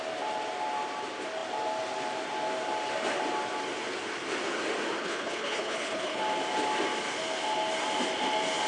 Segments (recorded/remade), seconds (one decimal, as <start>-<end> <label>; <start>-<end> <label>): 0.0-5.0 recorded; 5.0-6.2 remade; 6.2-8.7 recorded